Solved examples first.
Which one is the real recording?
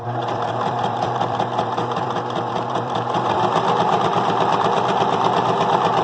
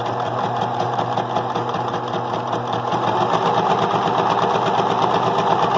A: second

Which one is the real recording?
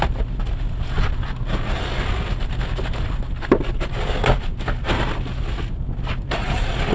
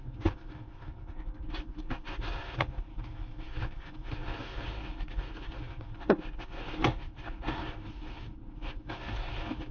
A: first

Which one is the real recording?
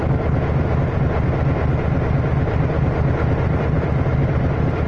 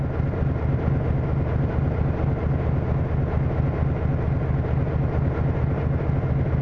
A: second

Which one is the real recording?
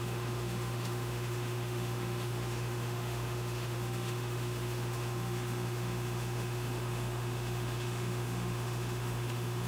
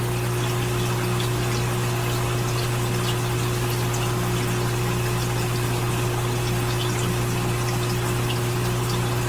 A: second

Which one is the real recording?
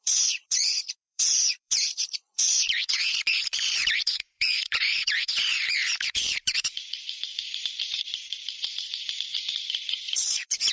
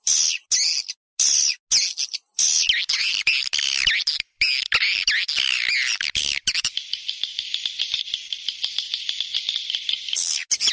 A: second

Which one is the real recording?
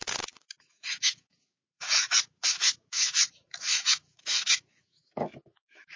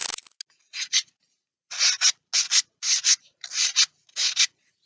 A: second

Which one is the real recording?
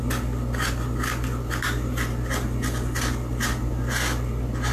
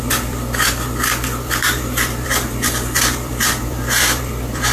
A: first